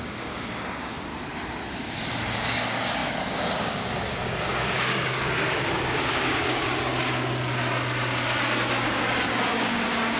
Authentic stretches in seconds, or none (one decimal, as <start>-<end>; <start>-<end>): 1.1-1.7; 6.7-8.8